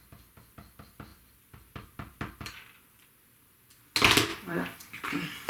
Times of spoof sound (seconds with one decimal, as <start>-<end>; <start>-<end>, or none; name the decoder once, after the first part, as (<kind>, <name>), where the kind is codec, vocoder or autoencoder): 1.1-3.7 (vocoder, BigVGAN v2); 4.3-5.5